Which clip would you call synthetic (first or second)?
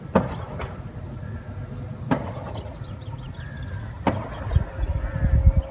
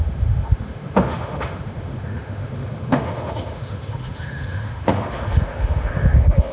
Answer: second